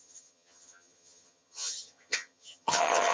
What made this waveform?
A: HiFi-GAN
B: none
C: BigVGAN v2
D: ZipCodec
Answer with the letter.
A